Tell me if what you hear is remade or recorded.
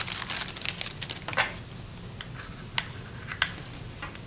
recorded